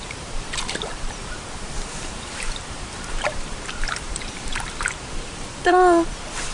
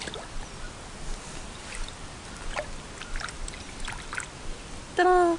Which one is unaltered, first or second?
second